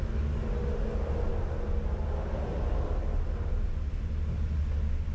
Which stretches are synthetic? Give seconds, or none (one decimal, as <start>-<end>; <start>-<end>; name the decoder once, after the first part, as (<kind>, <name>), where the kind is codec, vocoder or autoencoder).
none